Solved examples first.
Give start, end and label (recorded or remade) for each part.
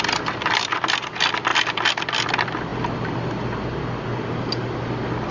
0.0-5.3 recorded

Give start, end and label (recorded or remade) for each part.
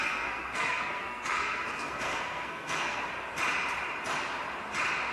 0.0-3.1 remade; 3.1-5.1 recorded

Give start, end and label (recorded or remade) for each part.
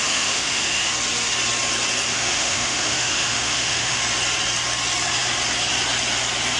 0.0-0.9 remade; 0.9-2.1 recorded; 2.1-4.0 remade; 4.0-6.6 recorded